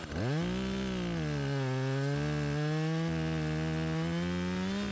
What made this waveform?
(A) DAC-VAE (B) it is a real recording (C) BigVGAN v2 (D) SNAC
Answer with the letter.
B